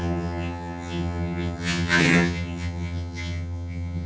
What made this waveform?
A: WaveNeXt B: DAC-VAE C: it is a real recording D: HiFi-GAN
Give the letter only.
D